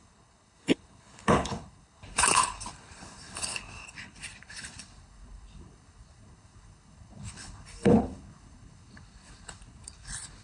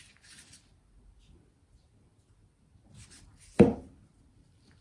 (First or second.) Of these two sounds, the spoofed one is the first